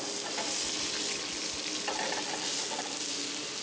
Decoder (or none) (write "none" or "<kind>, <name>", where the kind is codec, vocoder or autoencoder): none